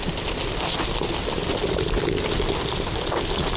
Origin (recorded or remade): recorded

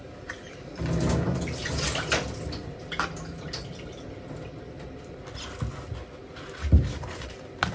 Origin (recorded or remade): recorded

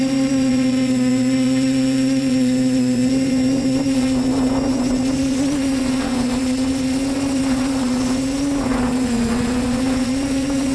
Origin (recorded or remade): remade